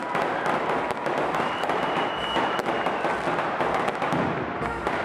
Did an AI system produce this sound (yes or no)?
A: no